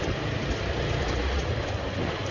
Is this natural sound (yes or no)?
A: yes